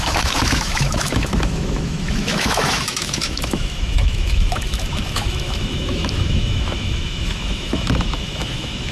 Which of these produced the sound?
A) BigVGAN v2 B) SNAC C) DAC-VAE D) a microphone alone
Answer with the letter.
C